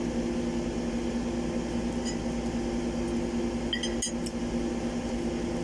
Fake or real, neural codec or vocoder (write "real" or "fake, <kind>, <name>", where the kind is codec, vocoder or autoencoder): real